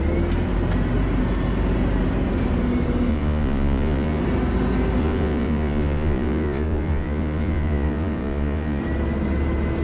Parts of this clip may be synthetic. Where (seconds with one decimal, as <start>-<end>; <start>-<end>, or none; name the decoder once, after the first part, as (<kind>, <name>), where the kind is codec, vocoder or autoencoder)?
3.1-4.2 (vocoder, Vocos); 5.0-8.8